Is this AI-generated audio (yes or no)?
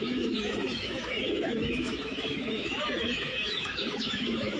yes